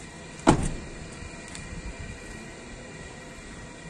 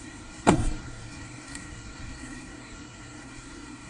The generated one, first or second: second